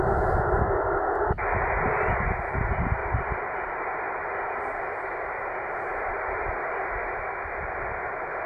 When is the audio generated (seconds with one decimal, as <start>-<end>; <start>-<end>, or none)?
3.0-4.6; 5.9-7.3